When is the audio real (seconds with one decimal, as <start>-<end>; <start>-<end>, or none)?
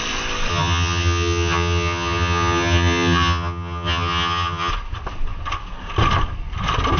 0.0-0.5; 4.7-7.0